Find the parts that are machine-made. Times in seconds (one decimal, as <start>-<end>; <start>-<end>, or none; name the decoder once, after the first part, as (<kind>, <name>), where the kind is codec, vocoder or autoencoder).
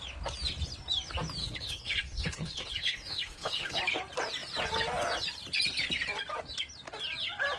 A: 1.4-3.8 (codec, HILCodec)